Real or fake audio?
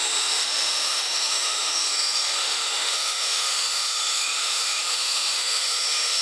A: fake